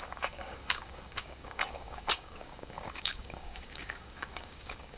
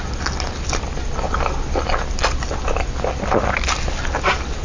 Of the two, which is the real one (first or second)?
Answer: second